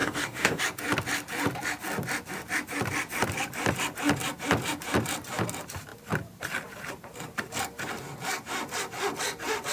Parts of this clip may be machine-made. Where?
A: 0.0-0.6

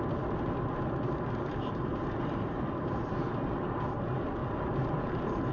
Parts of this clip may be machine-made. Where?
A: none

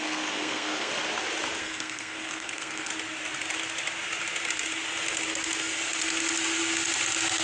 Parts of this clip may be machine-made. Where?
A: 0.0-0.9; 1.6-2.9

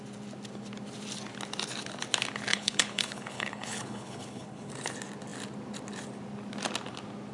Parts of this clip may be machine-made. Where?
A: 2.5-4.7